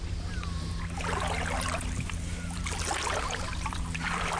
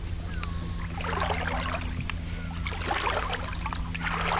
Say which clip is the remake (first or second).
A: first